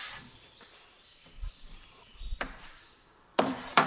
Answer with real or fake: fake